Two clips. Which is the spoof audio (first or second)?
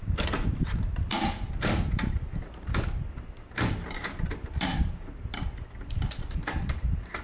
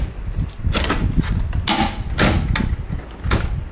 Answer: first